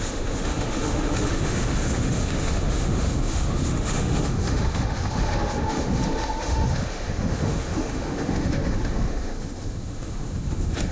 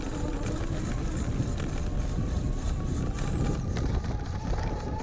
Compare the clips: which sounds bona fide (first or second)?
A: second